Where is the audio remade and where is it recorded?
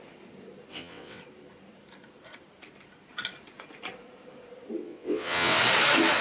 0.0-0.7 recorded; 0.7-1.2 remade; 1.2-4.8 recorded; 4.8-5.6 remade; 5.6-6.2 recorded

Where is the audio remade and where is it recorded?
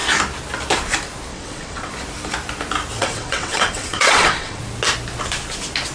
0.0-1.3 recorded; 1.3-1.9 remade; 1.9-3.0 recorded; 3.0-4.6 remade; 4.6-5.9 recorded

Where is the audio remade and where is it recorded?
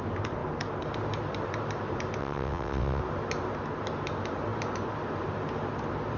0.0-2.2 recorded; 2.2-3.0 remade; 3.0-6.2 recorded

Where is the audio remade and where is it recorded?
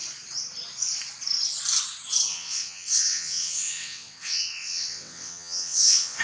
0.0-2.3 recorded; 2.3-6.2 remade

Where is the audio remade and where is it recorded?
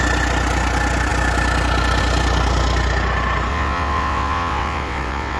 0.0-3.5 recorded; 3.5-5.4 remade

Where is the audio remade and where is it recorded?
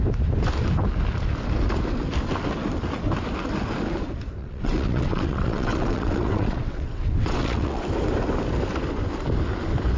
0.0-4.4 recorded; 4.4-7.8 remade; 7.8-10.0 recorded